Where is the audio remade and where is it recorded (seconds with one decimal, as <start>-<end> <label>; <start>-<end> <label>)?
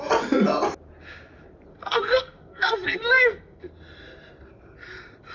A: 0.0-1.7 recorded; 1.7-3.7 remade; 3.7-5.3 recorded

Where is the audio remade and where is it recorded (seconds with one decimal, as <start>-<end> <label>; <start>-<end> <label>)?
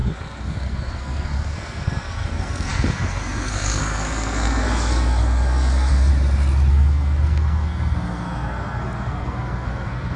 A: 0.0-6.1 remade; 6.1-6.7 recorded; 6.7-10.2 remade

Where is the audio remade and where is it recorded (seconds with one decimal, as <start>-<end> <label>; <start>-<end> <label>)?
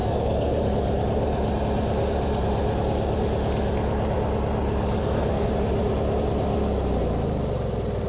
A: 0.0-0.6 remade; 0.6-5.0 recorded; 5.0-5.5 remade; 5.5-8.1 recorded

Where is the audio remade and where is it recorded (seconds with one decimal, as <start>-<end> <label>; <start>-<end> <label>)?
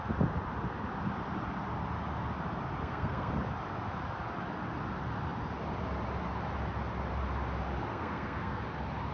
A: 0.0-2.8 recorded; 2.8-3.3 remade; 3.3-7.9 recorded; 7.9-8.6 remade; 8.6-9.1 recorded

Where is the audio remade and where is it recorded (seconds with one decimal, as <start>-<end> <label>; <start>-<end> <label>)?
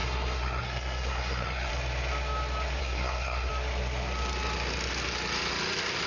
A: 0.0-1.7 remade; 1.7-2.8 recorded; 2.8-3.5 remade; 3.5-6.1 recorded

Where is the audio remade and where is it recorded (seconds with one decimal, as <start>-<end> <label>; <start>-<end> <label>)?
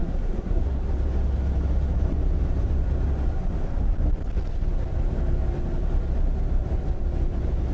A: 0.0-0.8 remade; 0.8-7.7 recorded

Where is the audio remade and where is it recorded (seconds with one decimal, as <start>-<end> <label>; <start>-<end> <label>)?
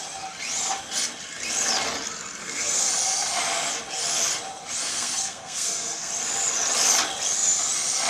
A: 0.0-2.4 recorded; 2.4-2.9 remade; 2.9-4.9 recorded; 4.9-6.1 remade; 6.1-8.1 recorded